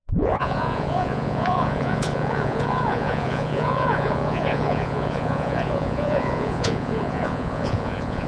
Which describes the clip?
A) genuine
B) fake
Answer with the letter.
B